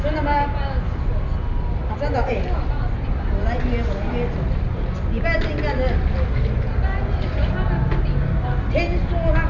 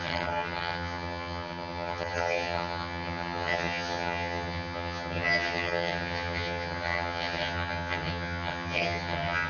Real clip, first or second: first